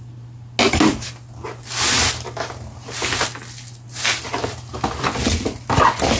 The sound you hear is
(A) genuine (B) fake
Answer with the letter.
A